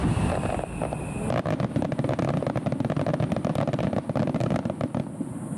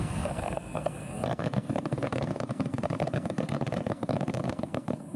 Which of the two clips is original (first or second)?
first